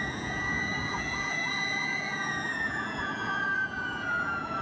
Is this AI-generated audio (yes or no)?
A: yes